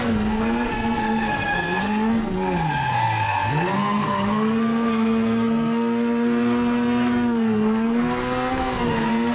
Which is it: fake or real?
fake